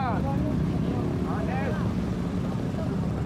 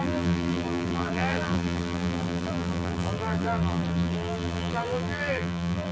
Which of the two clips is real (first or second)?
first